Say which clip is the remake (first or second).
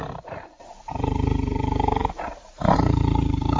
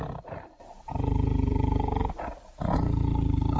first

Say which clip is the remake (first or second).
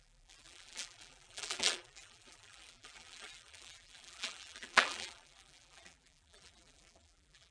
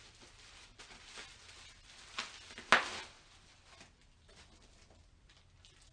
first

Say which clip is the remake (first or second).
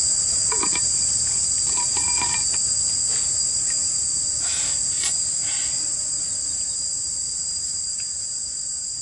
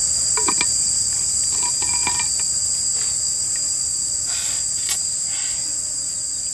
first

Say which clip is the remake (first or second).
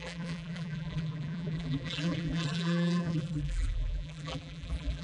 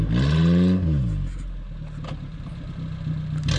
first